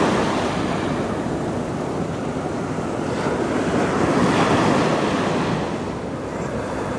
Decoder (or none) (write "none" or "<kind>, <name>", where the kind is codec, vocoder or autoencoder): none